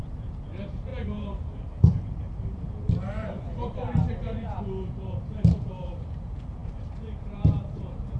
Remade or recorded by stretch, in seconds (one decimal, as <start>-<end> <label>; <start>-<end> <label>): 0.0-8.2 remade